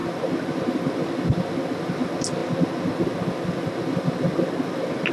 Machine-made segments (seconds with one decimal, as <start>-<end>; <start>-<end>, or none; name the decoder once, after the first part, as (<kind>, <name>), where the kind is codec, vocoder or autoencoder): none